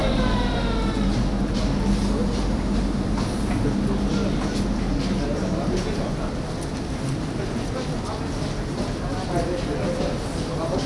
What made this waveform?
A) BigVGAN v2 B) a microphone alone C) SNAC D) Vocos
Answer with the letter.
B